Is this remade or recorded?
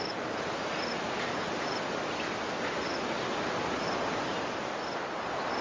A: recorded